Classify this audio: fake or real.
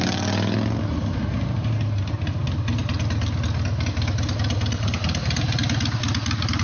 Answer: real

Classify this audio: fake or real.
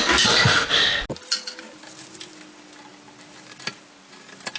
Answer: real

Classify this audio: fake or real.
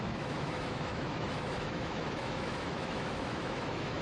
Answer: fake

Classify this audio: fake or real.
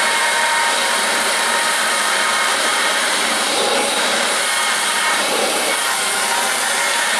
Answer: fake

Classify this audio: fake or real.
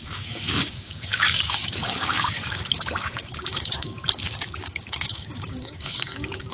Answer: fake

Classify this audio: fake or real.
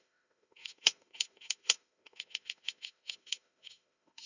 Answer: fake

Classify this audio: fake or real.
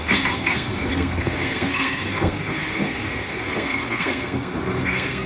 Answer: fake